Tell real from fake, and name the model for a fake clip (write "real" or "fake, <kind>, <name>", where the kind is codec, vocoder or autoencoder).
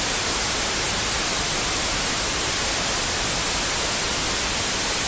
real